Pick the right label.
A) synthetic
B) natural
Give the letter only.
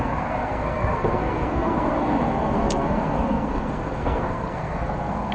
A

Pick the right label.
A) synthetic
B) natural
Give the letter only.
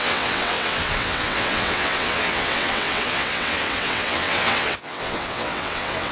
A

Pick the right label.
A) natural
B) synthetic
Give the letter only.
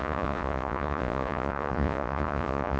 B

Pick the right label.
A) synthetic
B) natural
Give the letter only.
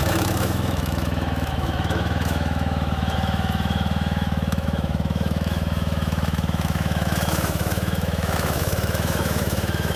A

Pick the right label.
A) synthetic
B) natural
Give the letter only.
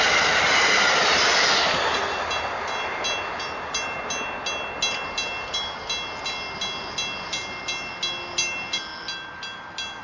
B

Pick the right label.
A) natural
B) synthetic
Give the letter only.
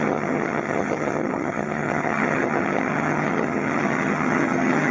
B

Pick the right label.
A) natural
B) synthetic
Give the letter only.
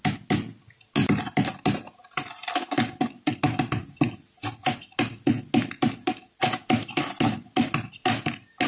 A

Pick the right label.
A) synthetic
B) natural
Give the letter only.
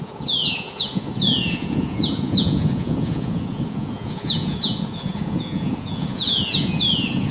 A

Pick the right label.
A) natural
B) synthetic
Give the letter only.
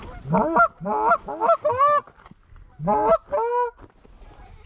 A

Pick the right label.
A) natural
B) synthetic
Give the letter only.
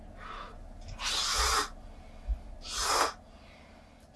A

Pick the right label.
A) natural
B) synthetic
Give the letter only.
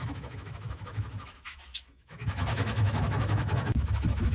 B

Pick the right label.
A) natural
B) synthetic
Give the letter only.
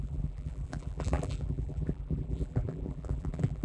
B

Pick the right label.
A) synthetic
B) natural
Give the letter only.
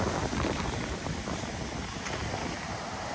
B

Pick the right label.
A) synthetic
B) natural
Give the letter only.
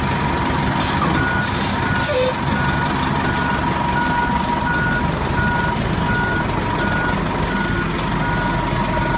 B